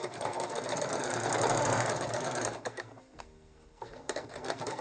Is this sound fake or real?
fake